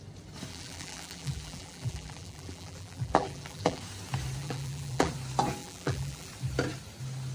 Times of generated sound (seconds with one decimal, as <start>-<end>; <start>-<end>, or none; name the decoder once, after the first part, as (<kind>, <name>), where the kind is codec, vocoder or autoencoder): 0.5-3.8 (vocoder, BigVGAN v2); 4.4-5.1; 5.6-6.3